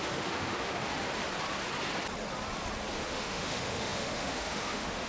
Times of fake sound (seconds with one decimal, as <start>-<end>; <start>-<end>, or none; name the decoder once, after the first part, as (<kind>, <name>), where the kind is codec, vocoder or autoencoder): 0.0-0.9 (autoencoder, DAC-VAE); 2.9-5.1